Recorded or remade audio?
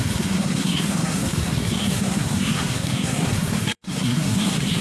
remade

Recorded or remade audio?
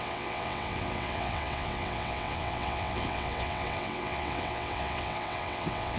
remade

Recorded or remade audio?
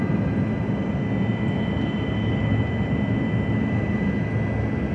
recorded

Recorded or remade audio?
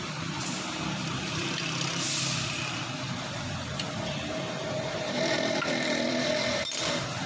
remade